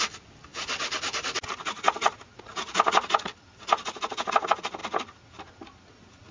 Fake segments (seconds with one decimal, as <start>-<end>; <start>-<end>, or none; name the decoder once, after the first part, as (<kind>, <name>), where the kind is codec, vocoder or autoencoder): 4.8-5.4 (vocoder, BigVGAN v2)